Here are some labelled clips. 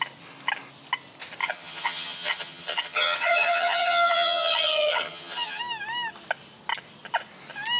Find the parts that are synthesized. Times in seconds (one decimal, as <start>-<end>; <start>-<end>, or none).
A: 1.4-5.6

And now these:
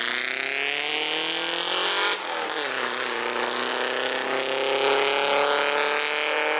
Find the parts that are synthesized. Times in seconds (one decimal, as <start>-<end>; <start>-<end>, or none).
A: none

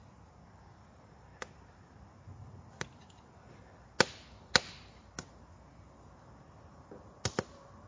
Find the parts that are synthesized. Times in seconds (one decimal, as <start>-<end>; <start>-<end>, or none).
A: none

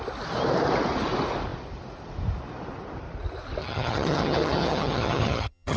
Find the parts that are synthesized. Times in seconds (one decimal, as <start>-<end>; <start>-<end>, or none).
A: 3.6-5.8

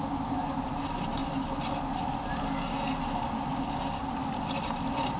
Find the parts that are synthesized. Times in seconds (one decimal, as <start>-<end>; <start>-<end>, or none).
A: none